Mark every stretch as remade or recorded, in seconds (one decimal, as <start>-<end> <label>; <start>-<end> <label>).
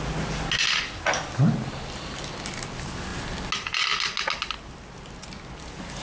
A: 0.0-6.0 recorded